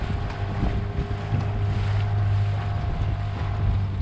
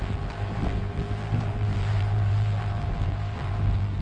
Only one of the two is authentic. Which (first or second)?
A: first